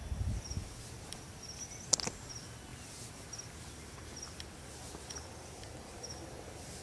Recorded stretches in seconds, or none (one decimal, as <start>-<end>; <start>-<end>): 0.0-6.8